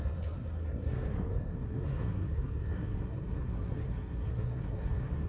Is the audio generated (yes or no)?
yes